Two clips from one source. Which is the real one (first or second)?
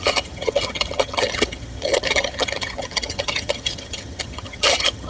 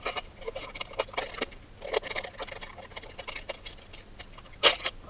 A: second